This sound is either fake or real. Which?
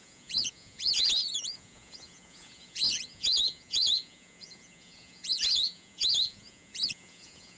fake